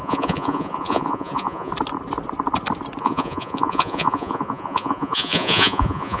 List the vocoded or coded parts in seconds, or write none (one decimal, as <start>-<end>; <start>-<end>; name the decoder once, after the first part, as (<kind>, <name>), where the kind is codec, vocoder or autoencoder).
0.0-1.7 (vocoder, Vocos); 3.0-6.2